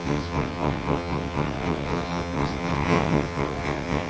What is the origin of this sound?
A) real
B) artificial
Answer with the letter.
B